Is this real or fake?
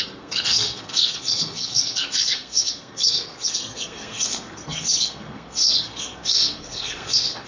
fake